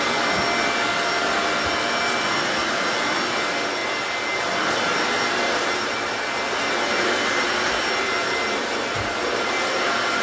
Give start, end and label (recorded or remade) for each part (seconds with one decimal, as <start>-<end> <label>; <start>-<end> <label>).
0.0-10.2 recorded